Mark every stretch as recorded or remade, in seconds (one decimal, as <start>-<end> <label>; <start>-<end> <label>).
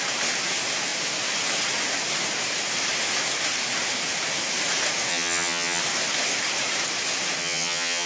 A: 0.0-5.1 recorded; 5.1-5.8 remade; 5.8-7.4 recorded; 7.4-8.1 remade